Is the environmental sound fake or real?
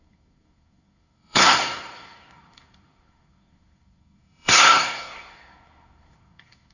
fake